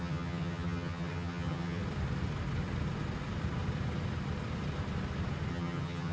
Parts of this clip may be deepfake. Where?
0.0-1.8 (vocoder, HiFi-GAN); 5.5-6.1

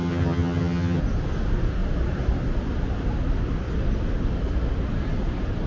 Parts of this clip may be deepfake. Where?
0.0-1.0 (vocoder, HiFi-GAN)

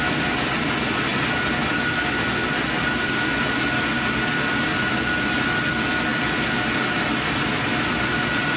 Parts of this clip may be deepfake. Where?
none

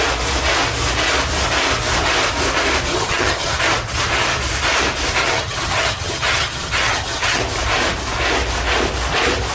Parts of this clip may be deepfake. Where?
2.9-3.6 (vocoder, HiFi-GAN); 5.2-7.4

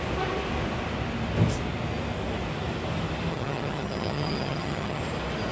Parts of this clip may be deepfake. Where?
3.3-5.0 (vocoder, HiFi-GAN)

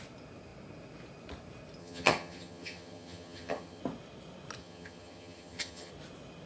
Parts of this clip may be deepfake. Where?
1.8-3.8 (vocoder, HiFi-GAN); 4.6-5.9